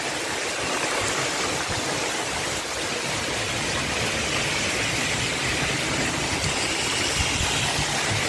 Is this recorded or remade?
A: recorded